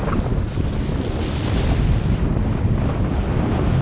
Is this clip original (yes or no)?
yes